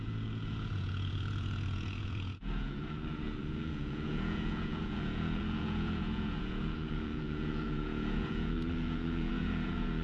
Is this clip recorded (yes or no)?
no